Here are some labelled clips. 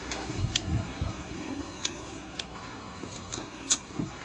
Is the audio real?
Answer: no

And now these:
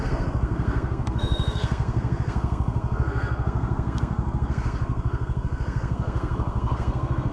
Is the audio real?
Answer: no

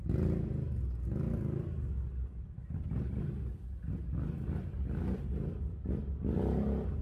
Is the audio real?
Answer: yes